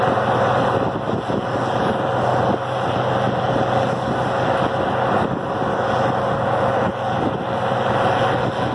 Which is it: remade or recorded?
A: recorded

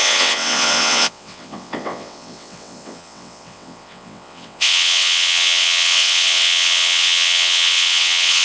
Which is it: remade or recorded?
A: remade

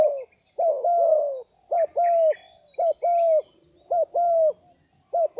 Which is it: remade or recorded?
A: recorded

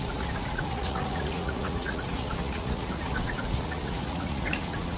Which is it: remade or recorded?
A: remade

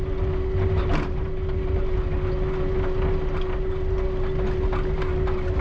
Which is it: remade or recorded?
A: recorded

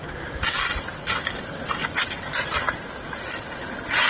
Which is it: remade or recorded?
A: recorded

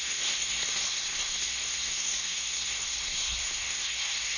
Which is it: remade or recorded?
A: remade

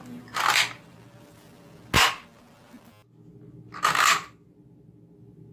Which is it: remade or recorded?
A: recorded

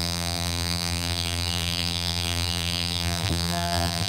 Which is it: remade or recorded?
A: remade